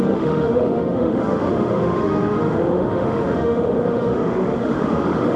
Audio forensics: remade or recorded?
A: remade